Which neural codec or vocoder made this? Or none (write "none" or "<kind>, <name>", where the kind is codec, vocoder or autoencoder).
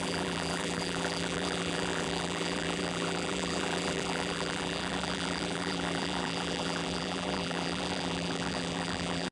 vocoder, BigVGAN v2